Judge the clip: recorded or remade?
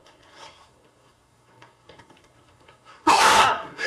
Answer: remade